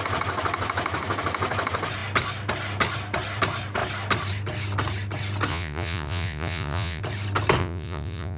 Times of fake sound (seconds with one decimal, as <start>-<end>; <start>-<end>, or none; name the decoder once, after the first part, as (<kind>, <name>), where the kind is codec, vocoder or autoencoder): 5.5-7.0 (vocoder, Vocos); 7.6-8.4